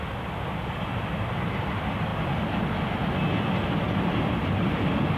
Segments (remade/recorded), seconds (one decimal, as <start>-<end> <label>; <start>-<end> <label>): 0.0-5.2 recorded